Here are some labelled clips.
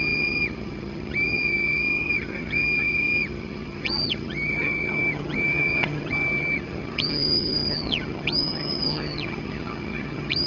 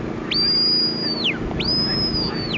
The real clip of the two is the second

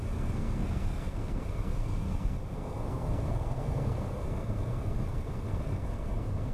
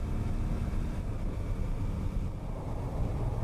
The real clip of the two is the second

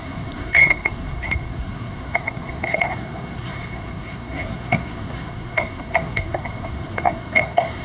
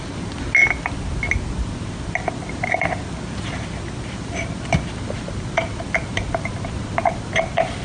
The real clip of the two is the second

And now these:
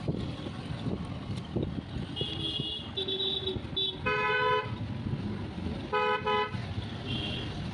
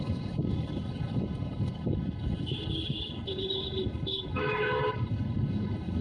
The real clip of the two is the first